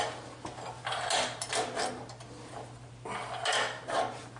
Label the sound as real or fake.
real